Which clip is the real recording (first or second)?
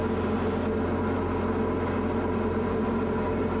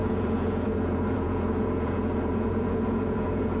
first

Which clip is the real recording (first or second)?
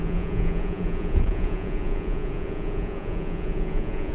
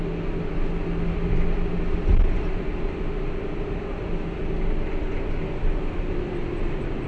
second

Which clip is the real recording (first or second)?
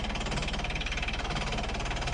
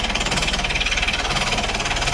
first